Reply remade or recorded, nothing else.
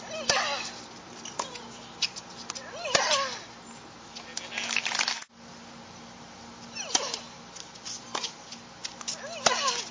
recorded